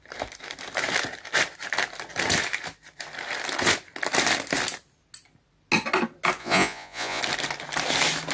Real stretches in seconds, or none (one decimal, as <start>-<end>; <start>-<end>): 0.0-6.4; 7.2-8.3